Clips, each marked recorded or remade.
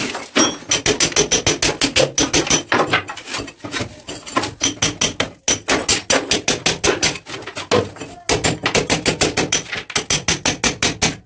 recorded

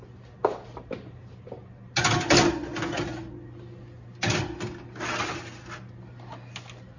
recorded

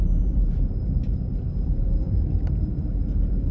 remade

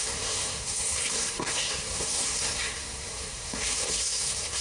remade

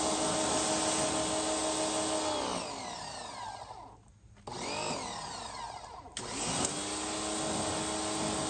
recorded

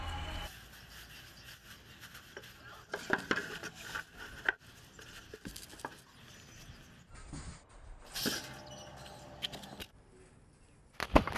recorded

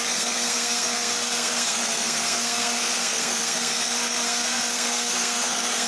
remade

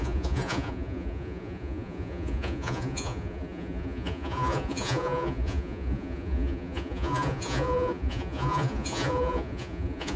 remade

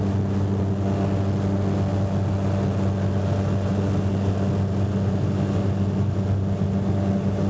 recorded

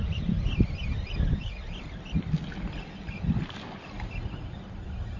recorded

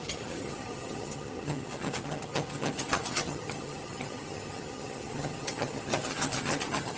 remade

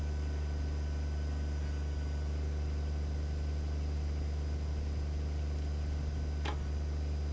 recorded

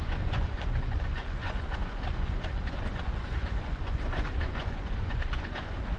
remade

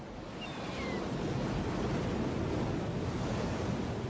recorded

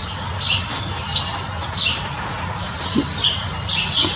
recorded